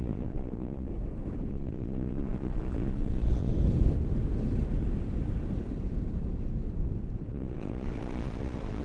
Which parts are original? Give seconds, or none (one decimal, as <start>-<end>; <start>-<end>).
0.9-1.5; 3.5-7.3